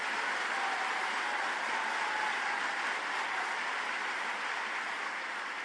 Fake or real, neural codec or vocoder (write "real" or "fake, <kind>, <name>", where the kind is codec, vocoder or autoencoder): real